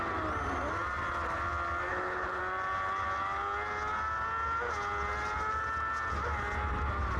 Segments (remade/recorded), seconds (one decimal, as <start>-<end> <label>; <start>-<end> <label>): 0.0-1.9 recorded; 1.9-2.4 remade; 2.4-7.2 recorded